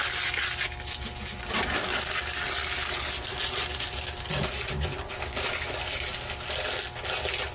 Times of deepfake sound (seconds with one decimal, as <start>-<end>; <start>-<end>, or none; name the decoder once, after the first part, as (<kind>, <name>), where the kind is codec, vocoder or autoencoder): none